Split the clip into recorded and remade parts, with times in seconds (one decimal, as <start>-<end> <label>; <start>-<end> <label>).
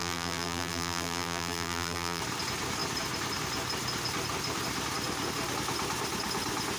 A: 0.0-2.2 remade; 2.2-6.8 recorded